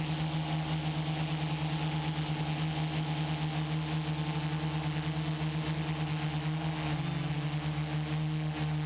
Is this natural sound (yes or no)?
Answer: yes